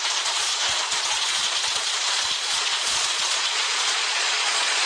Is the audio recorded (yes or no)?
no